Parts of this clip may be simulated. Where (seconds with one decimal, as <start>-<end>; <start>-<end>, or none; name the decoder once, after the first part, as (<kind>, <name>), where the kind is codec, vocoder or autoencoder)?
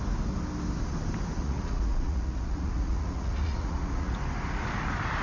1.4-4.2 (vocoder, Vocos)